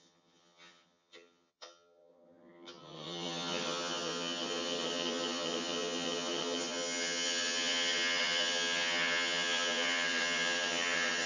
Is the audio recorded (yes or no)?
no